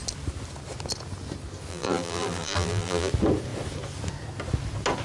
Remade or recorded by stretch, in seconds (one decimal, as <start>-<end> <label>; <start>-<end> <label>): 0.0-1.7 recorded; 1.7-3.1 remade; 3.1-5.0 recorded